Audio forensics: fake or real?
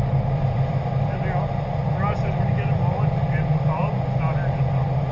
real